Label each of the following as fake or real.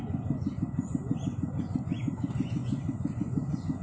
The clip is fake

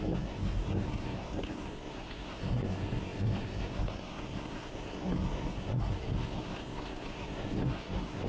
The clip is fake